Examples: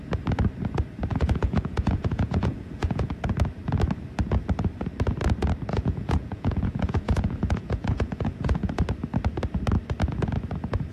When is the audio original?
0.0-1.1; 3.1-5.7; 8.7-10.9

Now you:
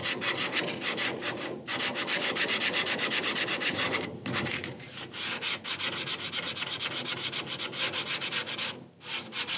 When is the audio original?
5.0-9.6

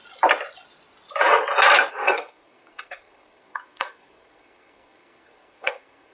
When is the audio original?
0.0-1.9

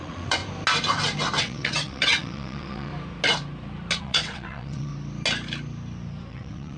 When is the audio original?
0.4-1.4; 2.9-4.0; 4.9-6.3

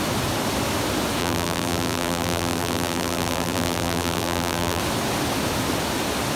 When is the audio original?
0.0-1.2; 4.8-6.4

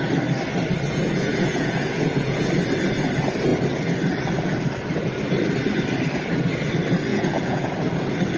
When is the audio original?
0.0-0.9; 2.5-7.1; 7.7-8.4

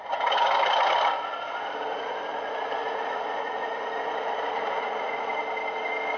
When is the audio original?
0.0-1.9; 5.4-6.2